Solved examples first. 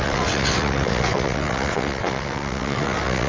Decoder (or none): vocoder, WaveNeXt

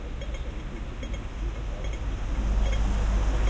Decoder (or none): none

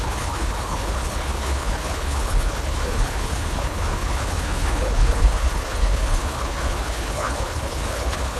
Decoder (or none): codec, HILCodec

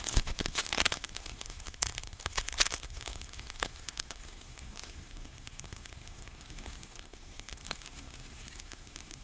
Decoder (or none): codec, SNAC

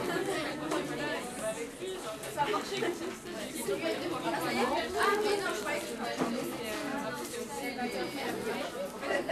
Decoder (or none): none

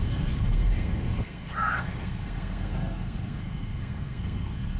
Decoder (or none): codec, SNAC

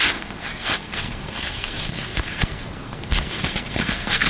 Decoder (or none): codec, SNAC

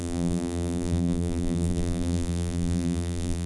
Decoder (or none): vocoder, BigVGAN v2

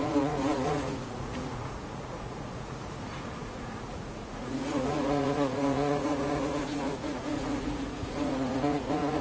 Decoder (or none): vocoder, Vocos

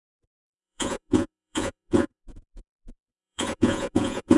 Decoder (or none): vocoder, Vocos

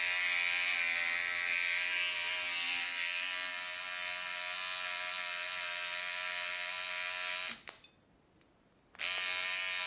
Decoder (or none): none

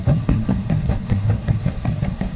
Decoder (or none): codec, SNAC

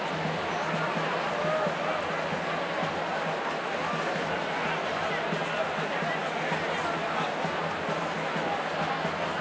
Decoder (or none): none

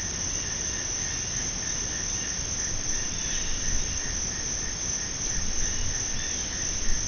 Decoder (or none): none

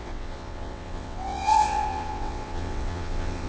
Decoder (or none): vocoder, WaveNeXt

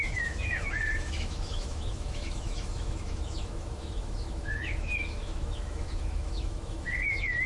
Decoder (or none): autoencoder, DAC-VAE